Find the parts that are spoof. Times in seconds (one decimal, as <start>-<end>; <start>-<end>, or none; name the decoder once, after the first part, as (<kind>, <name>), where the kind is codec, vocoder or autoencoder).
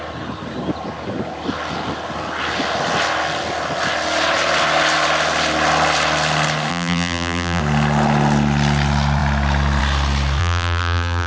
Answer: 6.7-7.6 (vocoder, BigVGAN v2); 10.4-11.3